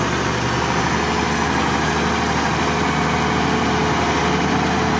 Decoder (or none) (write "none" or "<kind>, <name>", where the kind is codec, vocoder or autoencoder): none